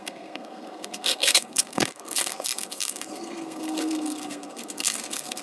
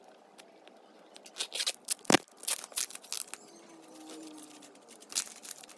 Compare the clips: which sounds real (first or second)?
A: second